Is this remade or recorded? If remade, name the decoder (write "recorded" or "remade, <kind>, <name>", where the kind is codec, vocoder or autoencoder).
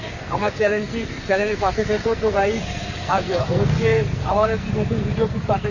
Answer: remade, codec, SNAC